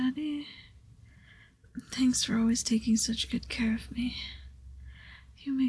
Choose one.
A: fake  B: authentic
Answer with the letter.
B